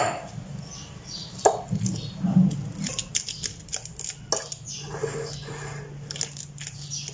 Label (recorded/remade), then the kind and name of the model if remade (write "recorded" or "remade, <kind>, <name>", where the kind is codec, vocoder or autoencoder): recorded